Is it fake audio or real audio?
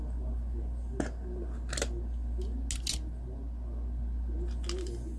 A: real